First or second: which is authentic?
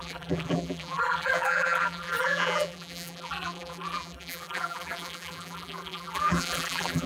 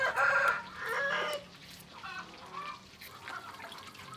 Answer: second